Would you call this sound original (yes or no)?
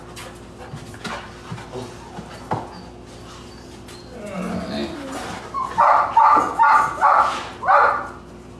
yes